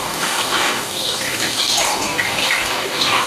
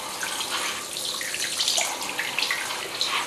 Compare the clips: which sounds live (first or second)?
second